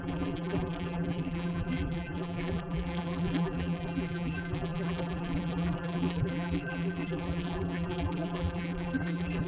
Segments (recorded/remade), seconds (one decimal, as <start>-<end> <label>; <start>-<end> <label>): 0.0-9.5 remade